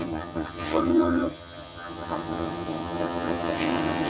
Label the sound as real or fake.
fake